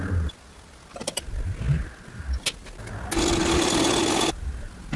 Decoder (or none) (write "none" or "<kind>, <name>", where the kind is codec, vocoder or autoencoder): none